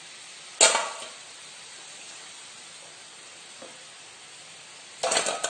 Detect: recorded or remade recorded